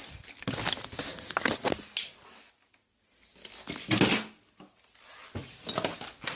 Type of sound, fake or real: real